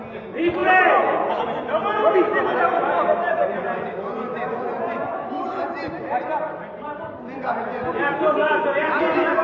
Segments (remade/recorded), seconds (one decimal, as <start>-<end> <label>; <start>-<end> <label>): 0.0-9.4 recorded